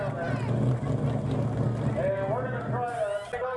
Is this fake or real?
real